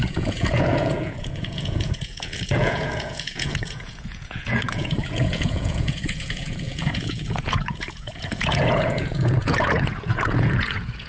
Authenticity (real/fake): fake